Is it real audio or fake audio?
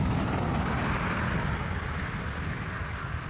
real